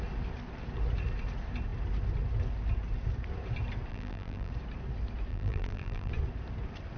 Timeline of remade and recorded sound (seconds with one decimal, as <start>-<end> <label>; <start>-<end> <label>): 0.0-3.9 recorded; 3.9-4.5 remade; 4.5-5.3 recorded; 5.3-6.1 remade; 6.1-7.0 recorded